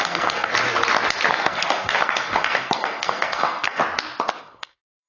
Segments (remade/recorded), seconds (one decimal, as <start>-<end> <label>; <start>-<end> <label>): 0.0-0.5 remade; 0.5-1.3 recorded; 1.3-3.8 remade; 3.8-4.4 recorded; 4.4-5.1 remade